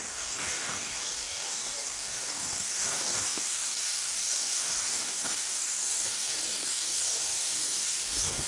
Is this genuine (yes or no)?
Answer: no